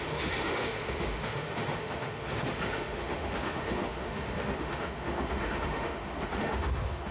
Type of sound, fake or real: fake